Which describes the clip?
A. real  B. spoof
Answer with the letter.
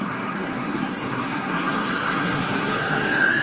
B